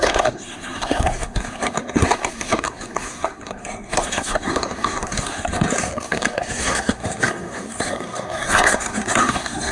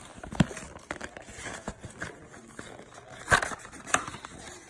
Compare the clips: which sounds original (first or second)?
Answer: second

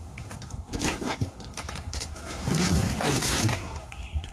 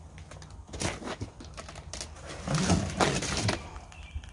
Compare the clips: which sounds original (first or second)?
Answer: second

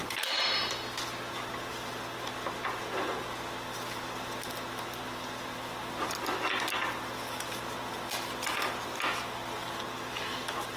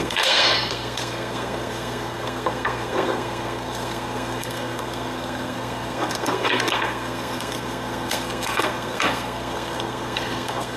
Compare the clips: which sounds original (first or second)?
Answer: first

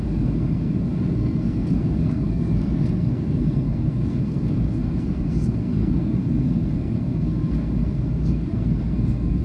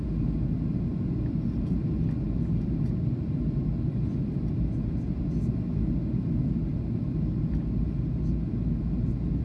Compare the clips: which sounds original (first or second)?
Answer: second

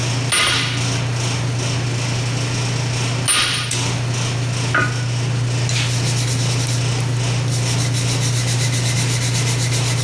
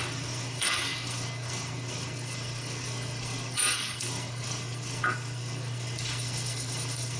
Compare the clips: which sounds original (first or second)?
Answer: first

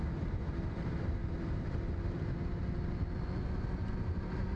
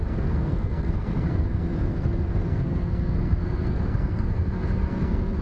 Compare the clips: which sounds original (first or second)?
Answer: first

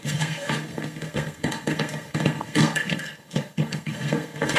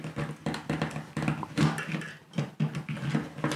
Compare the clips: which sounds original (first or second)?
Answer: second